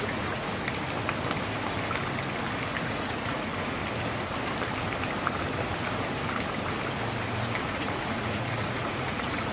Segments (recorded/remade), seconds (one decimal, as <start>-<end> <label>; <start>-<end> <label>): 0.0-0.5 remade; 0.5-2.8 recorded; 2.8-3.8 remade; 3.8-7.6 recorded; 7.6-9.5 remade